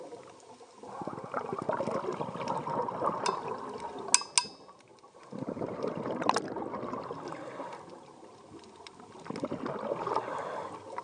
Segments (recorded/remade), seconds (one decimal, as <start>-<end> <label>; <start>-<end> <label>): 0.0-11.0 recorded